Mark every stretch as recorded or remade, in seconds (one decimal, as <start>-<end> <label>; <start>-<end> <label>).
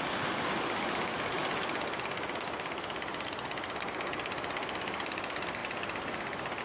0.0-6.6 recorded